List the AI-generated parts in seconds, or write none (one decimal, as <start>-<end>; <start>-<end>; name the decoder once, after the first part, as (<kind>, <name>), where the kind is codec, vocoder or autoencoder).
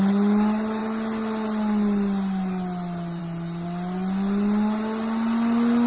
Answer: none